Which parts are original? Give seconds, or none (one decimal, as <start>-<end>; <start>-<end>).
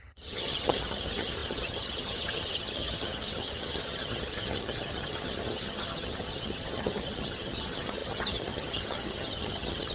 none